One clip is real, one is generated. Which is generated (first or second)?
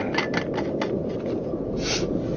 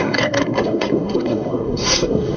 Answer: second